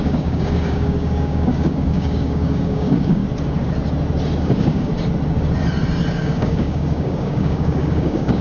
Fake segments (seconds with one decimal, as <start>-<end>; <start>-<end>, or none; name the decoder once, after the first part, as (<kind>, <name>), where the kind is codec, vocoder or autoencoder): 0.0-3.2 (codec, DAC); 4.4-4.9; 6.1-8.4